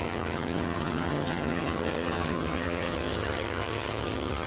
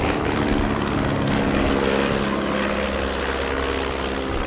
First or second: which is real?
second